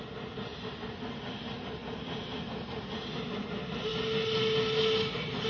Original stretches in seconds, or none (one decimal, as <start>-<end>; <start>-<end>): 0.0-5.5